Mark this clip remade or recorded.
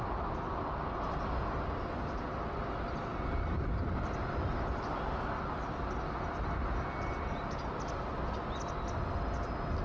recorded